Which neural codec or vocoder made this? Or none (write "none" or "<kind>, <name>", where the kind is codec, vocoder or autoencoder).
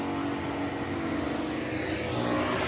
none